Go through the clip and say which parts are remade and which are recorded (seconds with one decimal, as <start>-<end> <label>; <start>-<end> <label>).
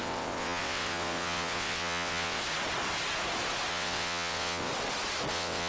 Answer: 0.0-2.4 remade; 2.4-3.7 recorded; 3.7-4.7 remade; 4.7-5.3 recorded; 5.3-5.7 remade